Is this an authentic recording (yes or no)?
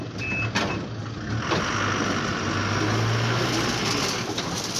yes